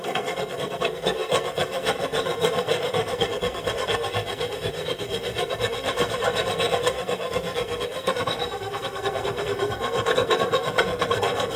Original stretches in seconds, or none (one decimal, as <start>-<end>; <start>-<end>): none